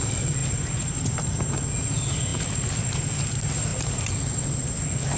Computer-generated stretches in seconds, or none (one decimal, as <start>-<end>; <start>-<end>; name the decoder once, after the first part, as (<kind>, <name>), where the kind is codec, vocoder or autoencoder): 0.4-1.3 (vocoder, BigVGAN v2); 3.7-4.8